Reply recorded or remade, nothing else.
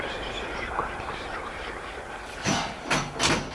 recorded